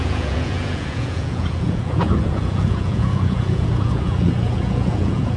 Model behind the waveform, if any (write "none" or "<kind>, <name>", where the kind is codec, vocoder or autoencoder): vocoder, Vocos